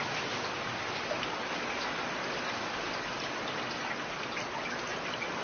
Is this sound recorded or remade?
recorded